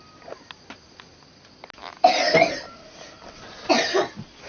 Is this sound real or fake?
real